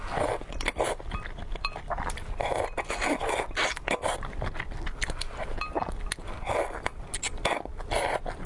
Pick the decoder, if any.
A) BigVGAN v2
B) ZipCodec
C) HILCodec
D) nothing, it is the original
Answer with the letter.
D